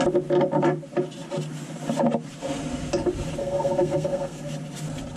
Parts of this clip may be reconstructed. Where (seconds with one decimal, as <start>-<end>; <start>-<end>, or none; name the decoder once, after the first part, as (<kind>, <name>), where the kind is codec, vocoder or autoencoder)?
3.4-4.5 (codec, SNAC)